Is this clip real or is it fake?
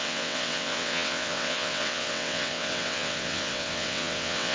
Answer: fake